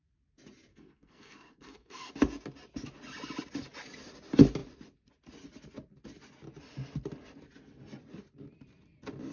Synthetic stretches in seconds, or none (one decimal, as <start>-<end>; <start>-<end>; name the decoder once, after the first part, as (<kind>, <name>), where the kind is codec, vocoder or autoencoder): 0.7-2.1 (codec, SNAC)